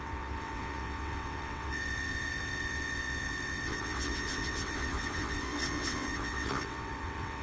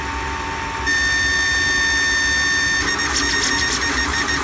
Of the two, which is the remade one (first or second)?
first